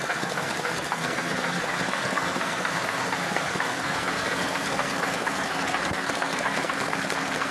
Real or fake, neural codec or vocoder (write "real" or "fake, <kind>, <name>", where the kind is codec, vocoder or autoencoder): fake, codec, SNAC